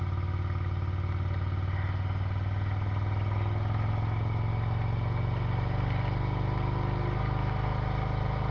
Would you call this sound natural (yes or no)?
yes